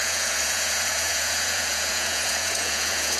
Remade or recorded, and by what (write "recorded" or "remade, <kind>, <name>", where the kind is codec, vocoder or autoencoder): remade, vocoder, Vocos